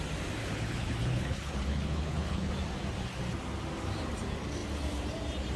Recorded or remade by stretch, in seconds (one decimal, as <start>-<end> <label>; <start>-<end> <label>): 0.0-0.4 recorded; 0.4-2.5 remade; 2.5-5.6 recorded